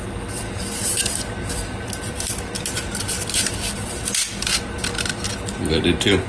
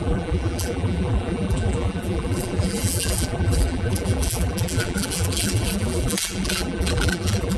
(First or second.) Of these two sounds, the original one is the first